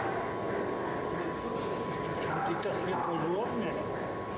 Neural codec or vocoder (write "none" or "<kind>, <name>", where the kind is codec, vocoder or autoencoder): none